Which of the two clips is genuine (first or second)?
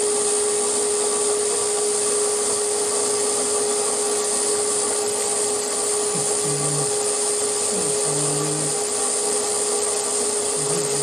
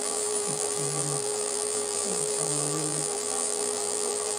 first